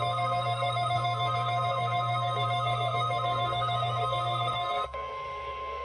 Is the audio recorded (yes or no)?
no